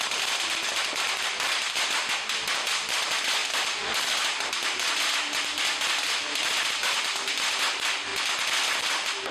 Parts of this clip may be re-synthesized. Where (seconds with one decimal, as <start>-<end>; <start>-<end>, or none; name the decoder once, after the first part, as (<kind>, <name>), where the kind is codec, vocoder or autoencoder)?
none